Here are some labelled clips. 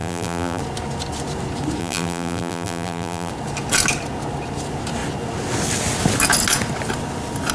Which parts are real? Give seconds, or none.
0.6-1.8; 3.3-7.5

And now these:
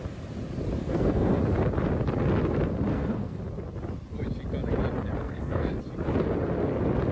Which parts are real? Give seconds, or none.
0.0-0.8; 1.4-2.9; 3.4-5.2; 5.8-7.1

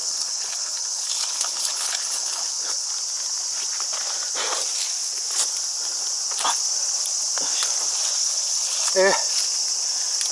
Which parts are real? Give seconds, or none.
2.9-8.2; 8.9-10.3

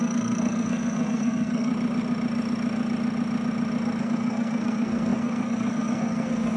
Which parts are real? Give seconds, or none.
1.7-4.0

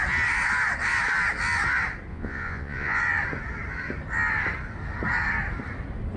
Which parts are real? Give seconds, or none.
0.0-2.1; 3.0-6.2

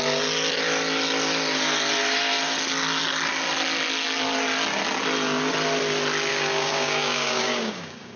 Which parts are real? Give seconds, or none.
0.0-6.3

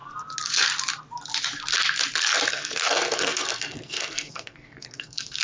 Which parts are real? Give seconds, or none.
0.0-2.5

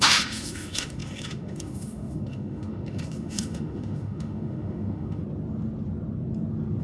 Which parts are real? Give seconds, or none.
5.2-6.8